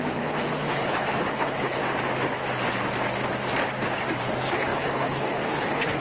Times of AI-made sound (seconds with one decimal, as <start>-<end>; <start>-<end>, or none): 0.0-1.8; 4.2-6.0